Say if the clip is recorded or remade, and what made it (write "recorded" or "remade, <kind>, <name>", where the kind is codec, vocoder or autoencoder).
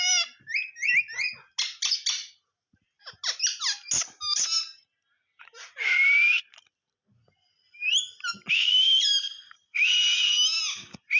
recorded